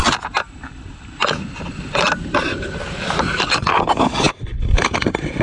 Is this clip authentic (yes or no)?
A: yes